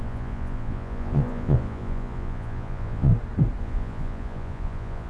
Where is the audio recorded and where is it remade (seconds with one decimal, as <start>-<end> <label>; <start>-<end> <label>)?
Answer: 0.0-3.1 remade; 3.1-3.6 recorded; 3.6-5.1 remade